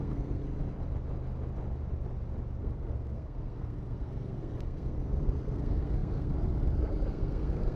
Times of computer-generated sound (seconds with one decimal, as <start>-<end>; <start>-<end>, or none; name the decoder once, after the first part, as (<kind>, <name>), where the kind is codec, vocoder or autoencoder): 0.0-0.4 (codec, SNAC); 2.6-7.8